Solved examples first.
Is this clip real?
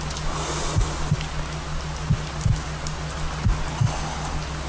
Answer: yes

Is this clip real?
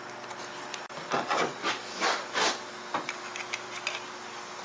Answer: yes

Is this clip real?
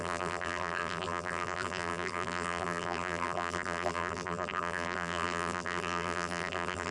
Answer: no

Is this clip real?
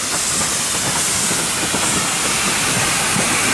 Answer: yes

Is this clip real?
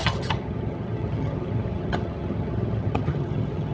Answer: no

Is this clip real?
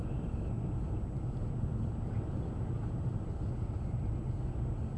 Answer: yes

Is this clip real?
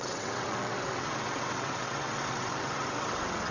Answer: no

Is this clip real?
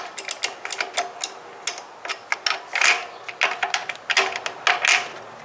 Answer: yes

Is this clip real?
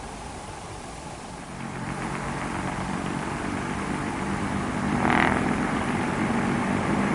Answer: no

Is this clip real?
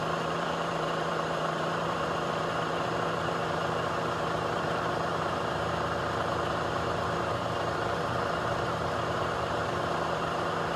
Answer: no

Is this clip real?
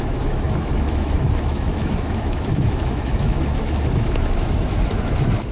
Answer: no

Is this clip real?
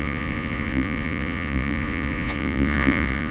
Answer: no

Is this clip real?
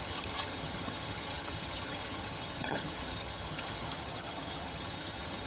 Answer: no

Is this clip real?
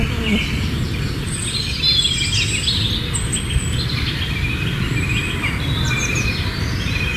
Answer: yes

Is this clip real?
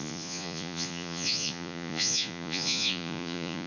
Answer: no